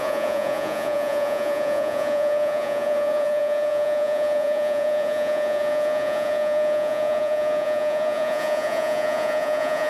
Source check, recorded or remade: remade